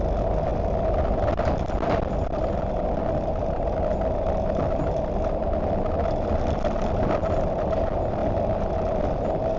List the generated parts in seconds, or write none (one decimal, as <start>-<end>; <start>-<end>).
none